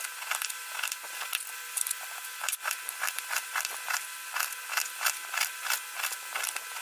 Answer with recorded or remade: recorded